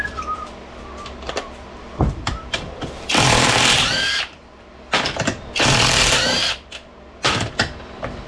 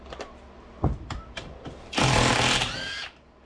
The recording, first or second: second